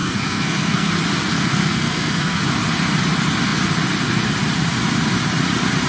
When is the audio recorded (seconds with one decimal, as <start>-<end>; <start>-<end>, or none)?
0.9-1.3; 2.4-5.9